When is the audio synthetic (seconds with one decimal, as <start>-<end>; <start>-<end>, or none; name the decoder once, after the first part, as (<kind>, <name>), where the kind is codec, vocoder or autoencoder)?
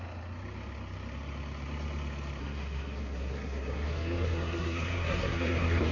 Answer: 2.4-5.9 (codec, SNAC)